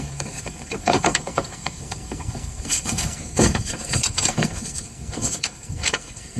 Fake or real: fake